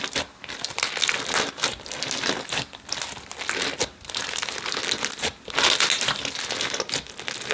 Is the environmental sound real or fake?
real